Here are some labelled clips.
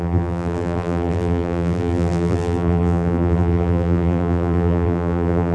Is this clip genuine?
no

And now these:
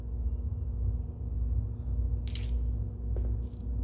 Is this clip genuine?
yes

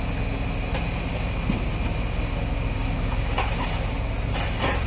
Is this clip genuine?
yes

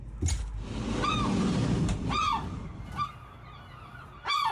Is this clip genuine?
yes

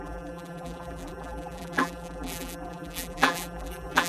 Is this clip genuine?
no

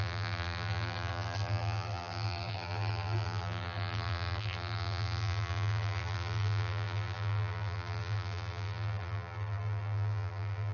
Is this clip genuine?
no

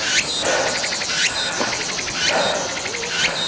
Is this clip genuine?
yes